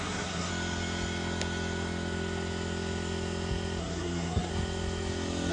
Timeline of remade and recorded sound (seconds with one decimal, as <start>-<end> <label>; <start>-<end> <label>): 0.0-0.5 remade; 0.5-3.8 recorded; 3.8-4.5 remade; 4.5-5.5 recorded